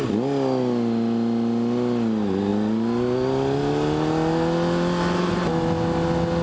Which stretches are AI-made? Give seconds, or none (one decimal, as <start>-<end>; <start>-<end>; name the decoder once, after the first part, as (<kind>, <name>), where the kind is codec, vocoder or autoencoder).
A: none